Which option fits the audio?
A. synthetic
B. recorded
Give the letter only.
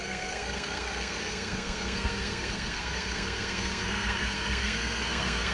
A